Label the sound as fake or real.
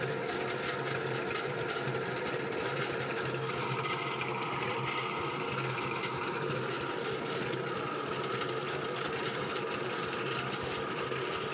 real